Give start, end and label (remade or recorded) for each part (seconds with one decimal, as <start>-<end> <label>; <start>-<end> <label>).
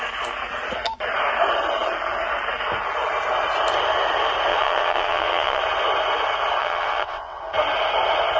0.0-4.5 recorded; 4.5-5.6 remade; 5.6-6.6 recorded; 6.6-7.4 remade; 7.4-8.4 recorded